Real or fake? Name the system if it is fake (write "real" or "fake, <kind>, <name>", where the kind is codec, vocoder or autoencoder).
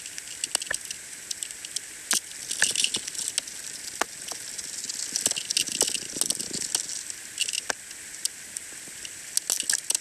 real